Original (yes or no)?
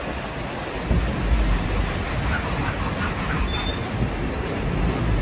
yes